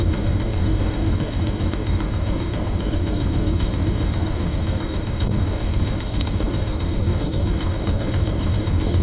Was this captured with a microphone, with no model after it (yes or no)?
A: no